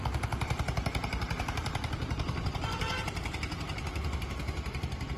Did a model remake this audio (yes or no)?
yes